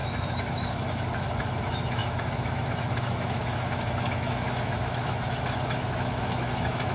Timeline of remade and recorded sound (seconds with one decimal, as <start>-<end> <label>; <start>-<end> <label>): 0.0-6.9 remade